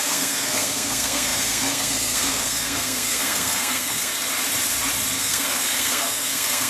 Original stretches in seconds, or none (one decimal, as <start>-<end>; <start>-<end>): 4.1-5.2